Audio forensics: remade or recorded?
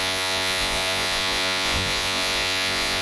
remade